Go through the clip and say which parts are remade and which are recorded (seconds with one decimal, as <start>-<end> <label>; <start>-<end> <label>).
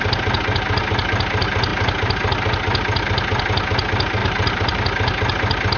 0.0-4.2 recorded; 4.2-4.8 remade; 4.8-5.8 recorded